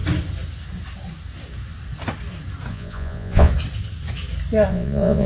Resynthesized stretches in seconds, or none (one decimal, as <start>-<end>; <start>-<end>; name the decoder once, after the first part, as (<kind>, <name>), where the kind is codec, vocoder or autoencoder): 2.7-3.5 (vocoder, Vocos); 4.7-5.3